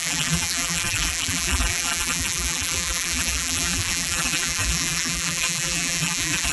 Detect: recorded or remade remade